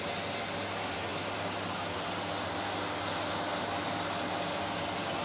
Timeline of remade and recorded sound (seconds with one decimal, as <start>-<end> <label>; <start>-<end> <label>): 0.0-5.2 recorded